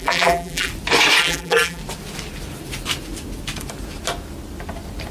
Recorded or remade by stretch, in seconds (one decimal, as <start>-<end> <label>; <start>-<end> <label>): 0.0-0.7 remade; 0.7-1.2 recorded; 1.2-1.8 remade; 1.8-5.1 recorded